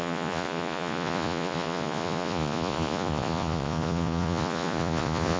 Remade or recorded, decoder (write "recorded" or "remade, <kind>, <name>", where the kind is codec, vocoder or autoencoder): remade, vocoder, Vocos